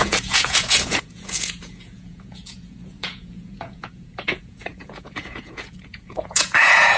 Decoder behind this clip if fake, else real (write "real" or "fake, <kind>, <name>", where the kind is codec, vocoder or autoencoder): fake, vocoder, Vocos